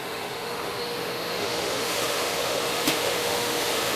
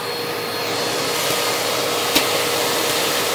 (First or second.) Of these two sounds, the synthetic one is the first